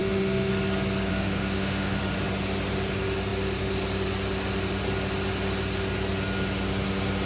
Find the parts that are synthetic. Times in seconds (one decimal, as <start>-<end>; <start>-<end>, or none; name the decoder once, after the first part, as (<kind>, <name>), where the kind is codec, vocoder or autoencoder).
0.0-0.5 (autoencoder, DAC-VAE); 1.1-2.0